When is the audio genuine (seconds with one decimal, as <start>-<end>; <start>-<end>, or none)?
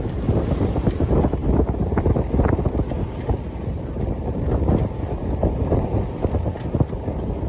0.0-7.5